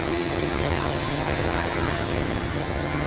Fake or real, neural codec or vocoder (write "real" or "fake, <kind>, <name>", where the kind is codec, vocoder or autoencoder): fake, vocoder, HiFi-GAN